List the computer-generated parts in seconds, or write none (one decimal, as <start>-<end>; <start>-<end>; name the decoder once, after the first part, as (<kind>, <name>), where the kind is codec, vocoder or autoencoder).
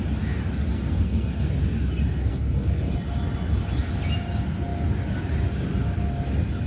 0.7-1.5 (codec, SNAC); 2.3-2.9